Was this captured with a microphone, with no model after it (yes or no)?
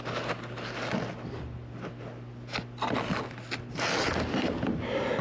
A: yes